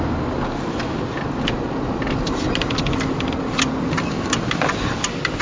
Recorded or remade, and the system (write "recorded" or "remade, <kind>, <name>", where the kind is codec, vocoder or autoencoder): recorded